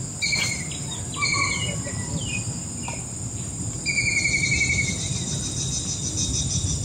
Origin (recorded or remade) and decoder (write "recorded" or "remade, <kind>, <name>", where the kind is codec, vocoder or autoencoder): recorded